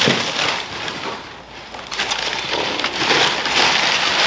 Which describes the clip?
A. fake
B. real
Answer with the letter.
B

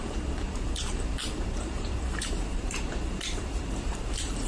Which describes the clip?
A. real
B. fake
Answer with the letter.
B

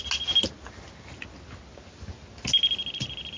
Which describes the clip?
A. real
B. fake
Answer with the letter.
A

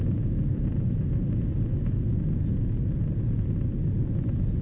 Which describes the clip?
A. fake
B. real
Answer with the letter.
B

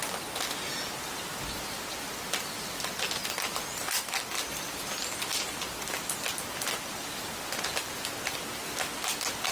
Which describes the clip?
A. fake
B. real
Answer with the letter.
B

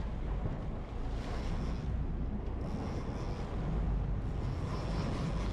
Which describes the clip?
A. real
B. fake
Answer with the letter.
A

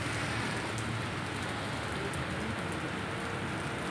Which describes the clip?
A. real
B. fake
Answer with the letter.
A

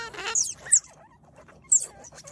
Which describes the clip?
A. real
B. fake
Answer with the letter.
A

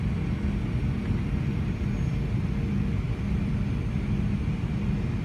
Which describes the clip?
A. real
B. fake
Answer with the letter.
A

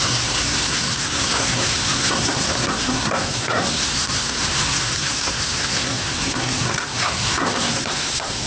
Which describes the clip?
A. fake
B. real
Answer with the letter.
A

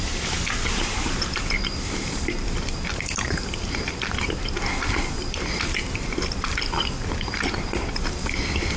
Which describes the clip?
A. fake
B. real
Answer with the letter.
A